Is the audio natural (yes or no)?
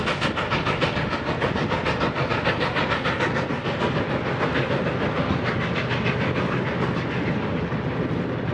yes